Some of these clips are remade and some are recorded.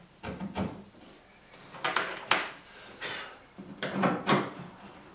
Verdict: remade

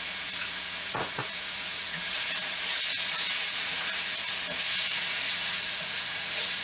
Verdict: remade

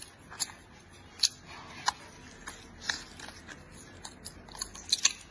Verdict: recorded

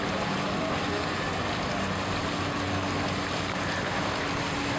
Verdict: recorded